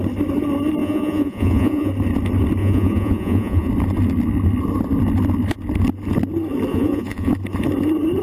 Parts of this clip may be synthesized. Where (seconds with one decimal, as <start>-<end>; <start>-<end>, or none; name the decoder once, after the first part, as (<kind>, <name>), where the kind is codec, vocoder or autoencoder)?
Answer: 0.8-1.9 (vocoder, Vocos); 2.6-3.7; 6.7-7.3